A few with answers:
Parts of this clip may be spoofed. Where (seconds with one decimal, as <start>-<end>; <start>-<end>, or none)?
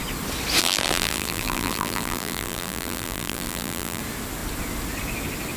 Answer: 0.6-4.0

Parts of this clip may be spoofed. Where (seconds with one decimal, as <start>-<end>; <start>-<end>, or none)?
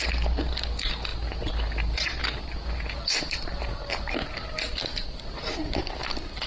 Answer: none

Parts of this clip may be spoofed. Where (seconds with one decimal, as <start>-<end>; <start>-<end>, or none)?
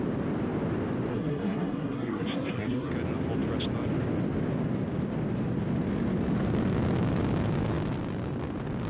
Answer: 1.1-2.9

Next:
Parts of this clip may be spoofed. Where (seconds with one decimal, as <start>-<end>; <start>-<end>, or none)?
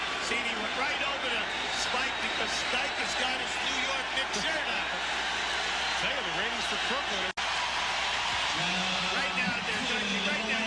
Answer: 0.0-3.3; 7.8-10.7